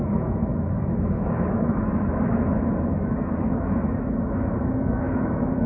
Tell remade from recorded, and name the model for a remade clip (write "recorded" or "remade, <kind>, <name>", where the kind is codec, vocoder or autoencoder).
remade, autoencoder, DAC-VAE